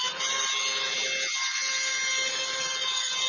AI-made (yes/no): no